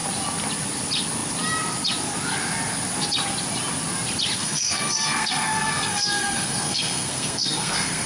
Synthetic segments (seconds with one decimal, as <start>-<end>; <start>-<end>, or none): 4.4-8.1